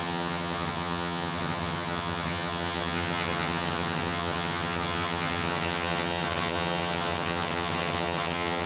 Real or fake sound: fake